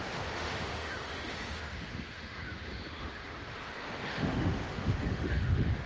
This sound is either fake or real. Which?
fake